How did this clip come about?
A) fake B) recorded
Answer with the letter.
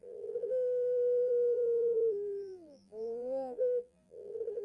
A